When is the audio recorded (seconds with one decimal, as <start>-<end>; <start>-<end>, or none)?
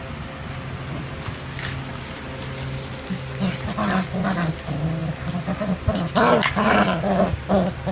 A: 0.0-7.9